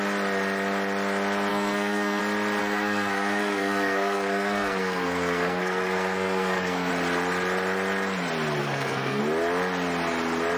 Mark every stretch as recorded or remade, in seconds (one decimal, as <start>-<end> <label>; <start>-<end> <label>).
0.0-1.5 recorded; 1.5-2.2 remade; 2.2-2.6 recorded; 2.6-6.9 remade; 6.9-8.6 recorded; 8.6-9.2 remade; 9.2-10.6 recorded